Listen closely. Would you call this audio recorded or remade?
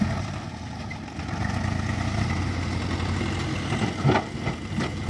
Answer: recorded